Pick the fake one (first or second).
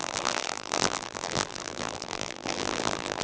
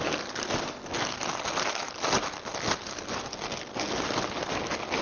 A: first